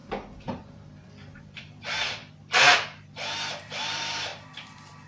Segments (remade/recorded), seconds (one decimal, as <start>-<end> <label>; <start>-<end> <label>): 0.0-2.2 remade; 2.2-3.5 recorded; 3.5-5.1 remade